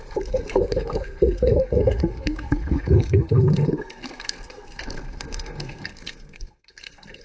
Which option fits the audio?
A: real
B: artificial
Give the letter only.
B